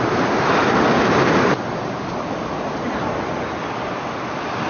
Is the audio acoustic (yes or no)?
yes